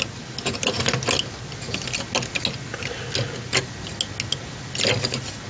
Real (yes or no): yes